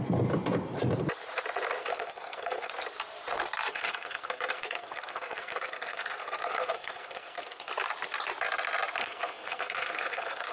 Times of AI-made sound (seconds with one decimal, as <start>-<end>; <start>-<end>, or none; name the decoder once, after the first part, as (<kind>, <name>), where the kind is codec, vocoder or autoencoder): 1.8-2.7 (codec, SNAC); 3.7-7.7; 9.0-10.5